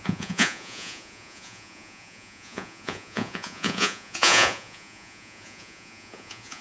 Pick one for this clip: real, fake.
fake